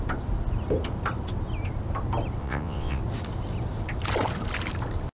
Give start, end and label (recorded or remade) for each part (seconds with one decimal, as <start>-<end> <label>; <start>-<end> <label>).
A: 0.0-2.4 recorded; 2.4-3.0 remade; 3.0-5.2 recorded